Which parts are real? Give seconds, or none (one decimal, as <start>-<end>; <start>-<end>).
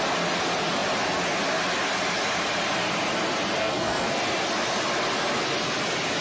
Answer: 0.0-3.6; 4.2-6.2